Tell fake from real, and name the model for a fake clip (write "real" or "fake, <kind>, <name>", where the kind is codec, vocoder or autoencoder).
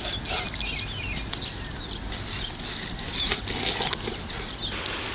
real